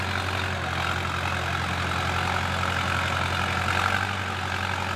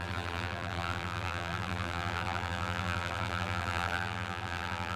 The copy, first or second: second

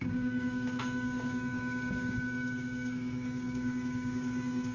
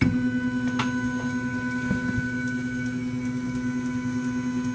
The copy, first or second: first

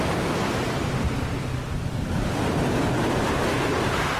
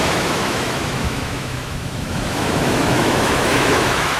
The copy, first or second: second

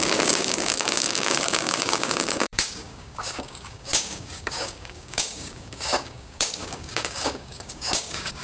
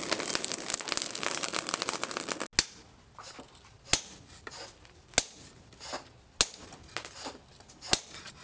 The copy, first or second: first